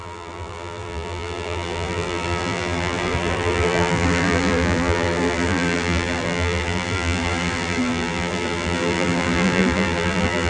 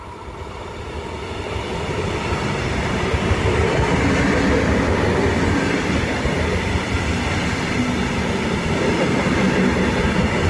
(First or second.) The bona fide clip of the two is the second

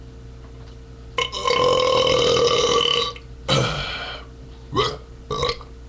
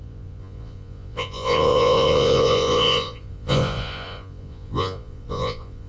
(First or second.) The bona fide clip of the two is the first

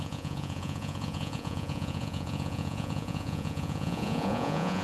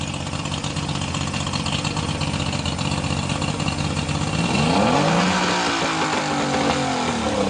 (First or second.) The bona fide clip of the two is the second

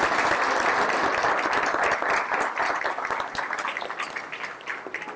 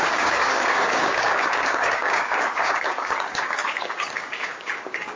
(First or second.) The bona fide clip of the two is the first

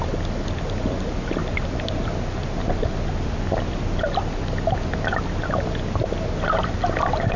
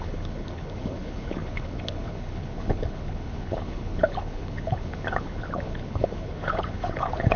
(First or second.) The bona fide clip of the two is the first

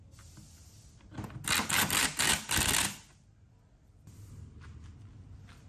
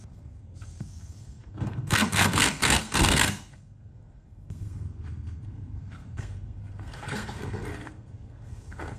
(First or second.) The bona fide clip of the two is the first